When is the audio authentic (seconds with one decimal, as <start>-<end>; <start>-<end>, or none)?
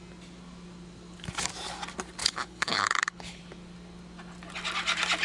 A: 0.0-2.2; 3.4-5.2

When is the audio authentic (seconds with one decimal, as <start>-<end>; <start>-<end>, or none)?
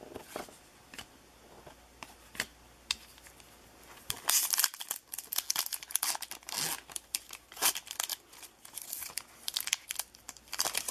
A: 0.0-10.9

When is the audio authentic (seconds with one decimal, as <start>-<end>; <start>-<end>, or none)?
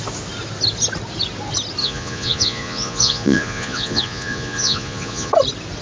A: 0.0-1.8; 5.3-5.8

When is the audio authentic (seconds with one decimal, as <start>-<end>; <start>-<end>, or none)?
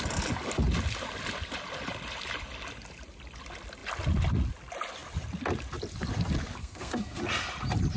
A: 0.0-6.6; 7.2-8.0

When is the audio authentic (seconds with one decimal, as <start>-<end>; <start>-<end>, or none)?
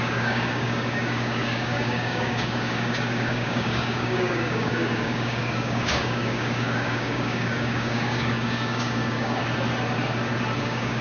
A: 9.4-10.6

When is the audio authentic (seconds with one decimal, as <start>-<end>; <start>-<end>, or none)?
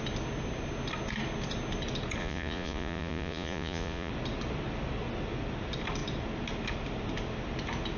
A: 0.0-2.2; 4.1-8.0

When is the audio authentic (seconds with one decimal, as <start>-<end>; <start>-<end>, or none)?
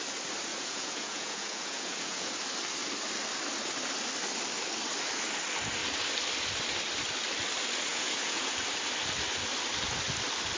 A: 0.0-0.5; 2.3-7.9; 8.5-10.6